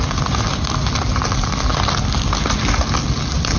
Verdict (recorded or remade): recorded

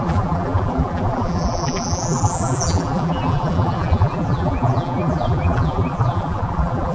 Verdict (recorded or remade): remade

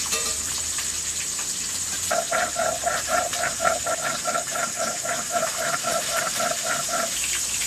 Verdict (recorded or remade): remade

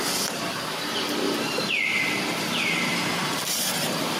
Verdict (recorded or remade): remade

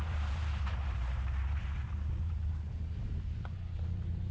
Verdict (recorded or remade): remade